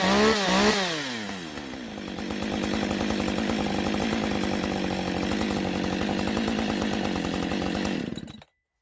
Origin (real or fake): real